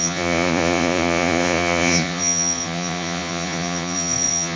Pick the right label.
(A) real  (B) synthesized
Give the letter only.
B